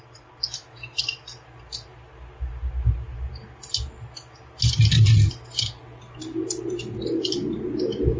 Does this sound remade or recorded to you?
recorded